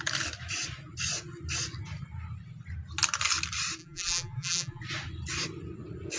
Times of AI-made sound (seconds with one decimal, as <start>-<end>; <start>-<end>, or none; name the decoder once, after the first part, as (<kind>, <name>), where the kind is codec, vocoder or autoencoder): 3.8-4.8 (vocoder, BigVGAN v2)